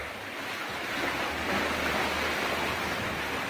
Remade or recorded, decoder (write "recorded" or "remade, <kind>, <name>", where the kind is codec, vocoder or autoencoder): recorded